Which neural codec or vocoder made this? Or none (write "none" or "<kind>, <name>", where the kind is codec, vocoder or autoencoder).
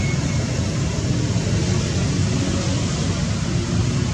none